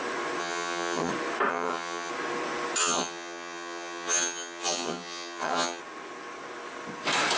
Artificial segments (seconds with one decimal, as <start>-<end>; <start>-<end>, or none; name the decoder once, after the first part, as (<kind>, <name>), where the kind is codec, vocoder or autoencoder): 0.4-1.1 (vocoder, HiFi-GAN); 1.5-2.1; 2.8-5.8